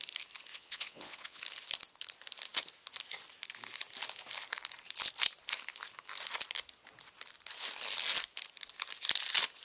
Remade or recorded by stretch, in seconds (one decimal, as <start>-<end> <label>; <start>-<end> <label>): 0.0-0.5 recorded; 0.5-1.4 remade; 1.4-9.6 recorded